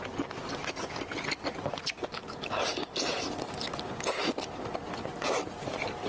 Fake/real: real